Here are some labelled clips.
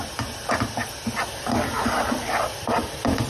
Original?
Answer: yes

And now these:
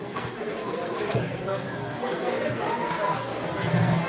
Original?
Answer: no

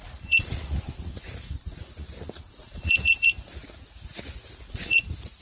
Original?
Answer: no